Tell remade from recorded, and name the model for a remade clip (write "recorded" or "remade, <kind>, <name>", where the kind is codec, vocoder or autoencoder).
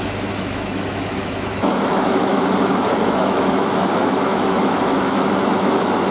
remade, autoencoder, DAC-VAE